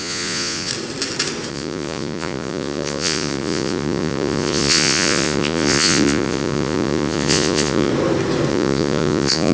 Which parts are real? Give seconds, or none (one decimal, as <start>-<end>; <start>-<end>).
0.7-1.5; 7.9-8.5